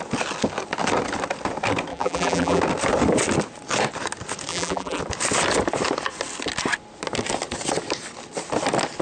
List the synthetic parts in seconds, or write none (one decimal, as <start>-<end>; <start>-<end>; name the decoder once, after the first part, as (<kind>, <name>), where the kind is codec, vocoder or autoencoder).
1.9-2.6 (vocoder, BigVGAN v2); 4.5-5.0